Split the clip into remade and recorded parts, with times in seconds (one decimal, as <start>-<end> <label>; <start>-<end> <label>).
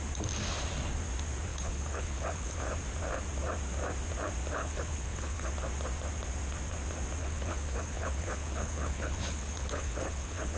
0.0-1.5 recorded; 1.5-2.7 remade; 2.7-4.6 recorded; 4.6-5.5 remade; 5.5-7.2 recorded; 7.2-10.6 remade